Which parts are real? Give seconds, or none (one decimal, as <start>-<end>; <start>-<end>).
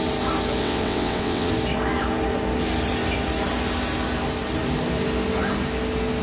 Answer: 0.0-0.6; 1.5-6.2